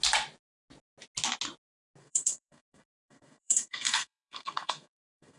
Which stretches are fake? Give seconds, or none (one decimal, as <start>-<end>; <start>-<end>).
2.0-5.4